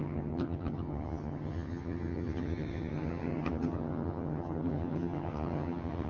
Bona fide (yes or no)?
no